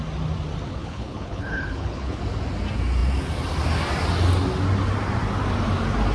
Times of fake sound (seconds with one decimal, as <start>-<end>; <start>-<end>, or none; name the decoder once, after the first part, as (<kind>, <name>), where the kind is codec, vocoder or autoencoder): 0.7-2.2 (codec, HILCodec)